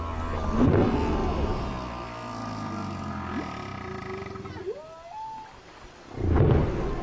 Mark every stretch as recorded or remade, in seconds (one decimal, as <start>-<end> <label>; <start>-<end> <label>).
0.0-1.2 recorded; 1.2-1.7 remade; 1.7-7.0 recorded